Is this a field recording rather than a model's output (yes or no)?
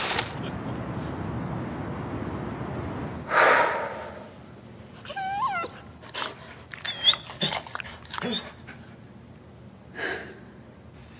yes